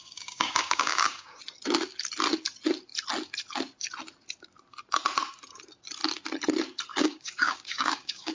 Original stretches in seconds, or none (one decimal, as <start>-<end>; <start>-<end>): 1.4-6.9